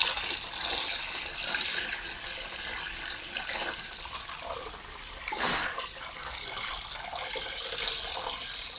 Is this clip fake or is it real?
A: real